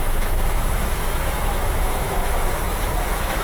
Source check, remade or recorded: remade